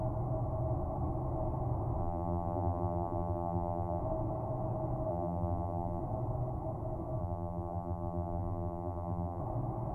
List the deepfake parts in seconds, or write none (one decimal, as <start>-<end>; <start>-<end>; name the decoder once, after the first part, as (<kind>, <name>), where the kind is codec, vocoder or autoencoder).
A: 2.0-4.0 (vocoder, BigVGAN v2); 5.1-6.0; 7.2-9.4